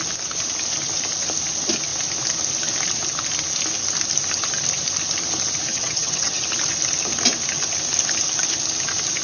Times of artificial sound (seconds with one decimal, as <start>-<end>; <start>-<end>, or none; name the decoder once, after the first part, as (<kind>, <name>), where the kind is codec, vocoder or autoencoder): 5.7-6.4 (vocoder, HiFi-GAN)